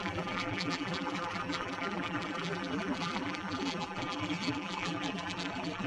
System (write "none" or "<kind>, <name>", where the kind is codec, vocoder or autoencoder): vocoder, BigVGAN v2